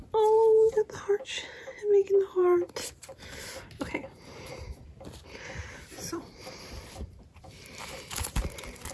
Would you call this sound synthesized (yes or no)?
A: yes